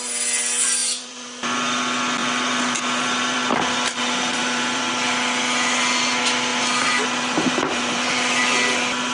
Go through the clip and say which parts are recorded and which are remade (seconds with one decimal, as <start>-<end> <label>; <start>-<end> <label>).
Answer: 0.0-0.8 recorded; 0.8-1.8 remade; 1.8-2.2 recorded; 2.2-4.8 remade; 4.8-6.5 recorded; 6.5-8.4 remade; 8.4-9.1 recorded